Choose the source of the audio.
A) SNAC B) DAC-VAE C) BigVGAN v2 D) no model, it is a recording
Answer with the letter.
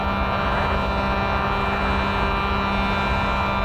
D